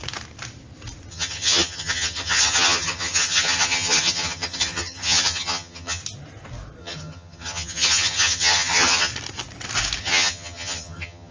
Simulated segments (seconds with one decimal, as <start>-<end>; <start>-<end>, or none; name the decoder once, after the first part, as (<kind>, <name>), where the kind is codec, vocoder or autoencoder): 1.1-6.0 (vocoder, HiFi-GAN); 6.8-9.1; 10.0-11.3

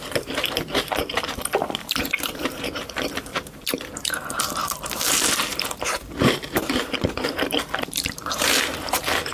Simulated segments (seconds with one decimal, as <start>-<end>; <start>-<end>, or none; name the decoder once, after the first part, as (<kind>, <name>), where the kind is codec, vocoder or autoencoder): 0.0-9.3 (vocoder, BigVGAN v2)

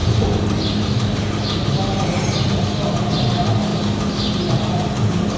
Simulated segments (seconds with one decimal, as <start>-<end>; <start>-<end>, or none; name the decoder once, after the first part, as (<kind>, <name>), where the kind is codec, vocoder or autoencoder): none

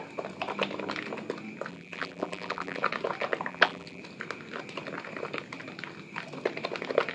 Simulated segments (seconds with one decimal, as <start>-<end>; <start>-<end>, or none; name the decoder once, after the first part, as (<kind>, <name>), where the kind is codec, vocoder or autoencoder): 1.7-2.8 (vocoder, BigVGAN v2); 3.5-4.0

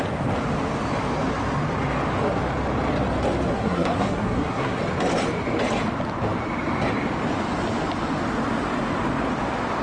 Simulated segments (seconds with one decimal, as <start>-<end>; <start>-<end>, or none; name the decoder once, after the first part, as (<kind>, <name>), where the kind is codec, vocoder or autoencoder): 3.5-4.8 (codec, SNAC)

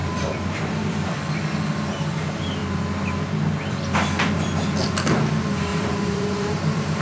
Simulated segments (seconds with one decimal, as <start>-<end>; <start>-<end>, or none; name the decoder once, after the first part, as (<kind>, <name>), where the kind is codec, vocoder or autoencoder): 0.0-1.2 (vocoder, BigVGAN v2); 5.7-7.0